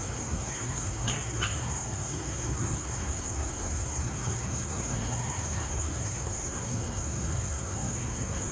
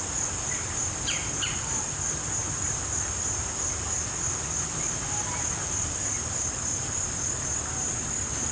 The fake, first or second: first